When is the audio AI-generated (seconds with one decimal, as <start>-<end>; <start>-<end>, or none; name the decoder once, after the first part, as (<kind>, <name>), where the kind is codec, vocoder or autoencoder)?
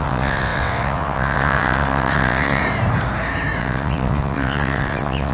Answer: 0.0-2.6 (vocoder, WaveNeXt); 3.6-5.3